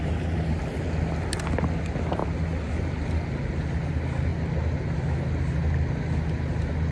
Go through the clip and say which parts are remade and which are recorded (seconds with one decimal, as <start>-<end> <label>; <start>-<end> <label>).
0.0-6.9 recorded